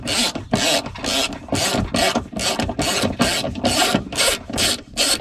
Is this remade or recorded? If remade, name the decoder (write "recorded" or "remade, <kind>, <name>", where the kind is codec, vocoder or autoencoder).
recorded